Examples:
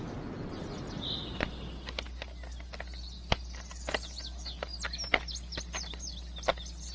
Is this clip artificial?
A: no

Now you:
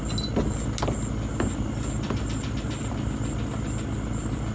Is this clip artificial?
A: no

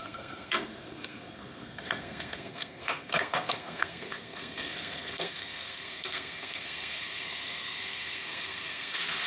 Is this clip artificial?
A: yes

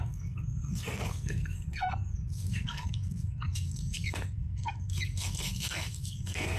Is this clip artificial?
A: yes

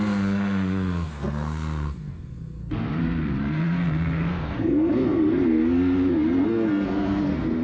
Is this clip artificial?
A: yes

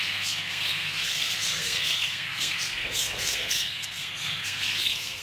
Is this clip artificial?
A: yes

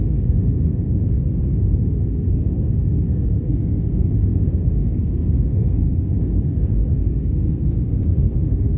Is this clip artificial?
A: yes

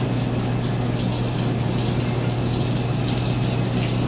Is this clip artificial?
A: no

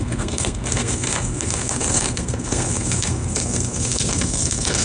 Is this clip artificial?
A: yes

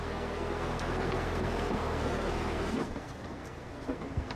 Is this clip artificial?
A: yes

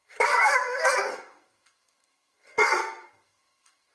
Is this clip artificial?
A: yes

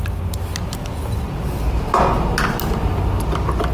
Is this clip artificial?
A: no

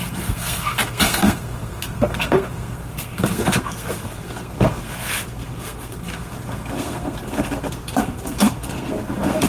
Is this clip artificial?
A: yes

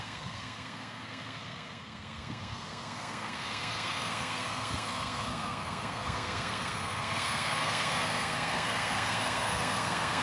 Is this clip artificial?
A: yes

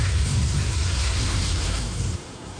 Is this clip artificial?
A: yes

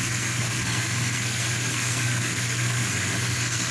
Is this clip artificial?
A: yes